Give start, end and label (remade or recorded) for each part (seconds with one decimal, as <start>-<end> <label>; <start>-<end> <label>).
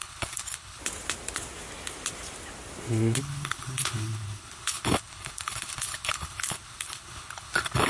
0.0-0.8 remade; 0.8-3.2 recorded; 3.2-7.9 remade